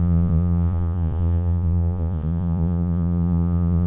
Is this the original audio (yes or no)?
no